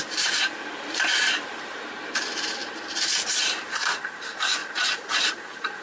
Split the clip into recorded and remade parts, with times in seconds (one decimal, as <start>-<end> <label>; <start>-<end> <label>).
0.0-5.8 remade